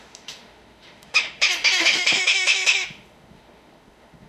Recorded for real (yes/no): no